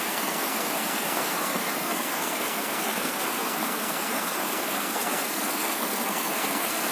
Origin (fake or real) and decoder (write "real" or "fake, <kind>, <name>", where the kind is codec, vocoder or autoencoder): fake, codec, SNAC